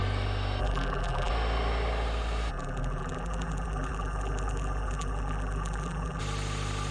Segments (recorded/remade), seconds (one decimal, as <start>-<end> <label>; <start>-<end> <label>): 0.0-0.6 recorded; 0.6-1.3 remade; 1.3-2.5 recorded; 2.5-6.2 remade; 6.2-6.9 recorded